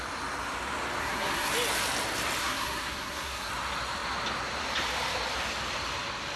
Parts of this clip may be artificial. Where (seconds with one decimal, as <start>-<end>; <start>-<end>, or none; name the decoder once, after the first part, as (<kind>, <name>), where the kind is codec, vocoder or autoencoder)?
1.0-1.5 (codec, SNAC); 2.4-3.5